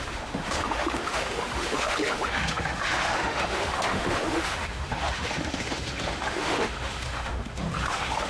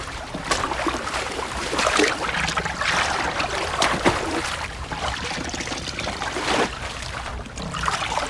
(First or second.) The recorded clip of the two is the second